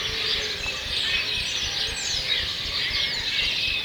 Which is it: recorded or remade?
recorded